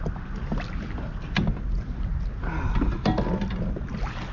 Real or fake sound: real